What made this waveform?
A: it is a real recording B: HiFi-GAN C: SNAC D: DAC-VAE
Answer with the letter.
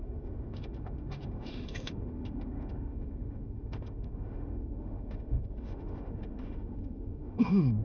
D